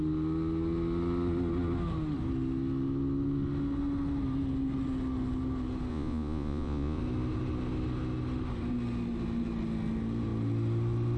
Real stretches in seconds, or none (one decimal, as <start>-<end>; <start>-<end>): 0.0-5.9; 7.0-11.2